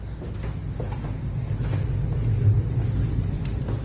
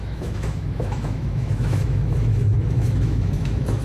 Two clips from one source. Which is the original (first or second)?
first